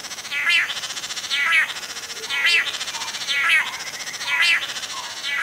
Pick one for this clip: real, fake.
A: real